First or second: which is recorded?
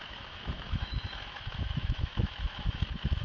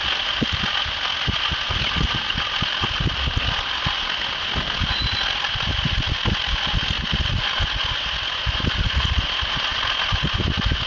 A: second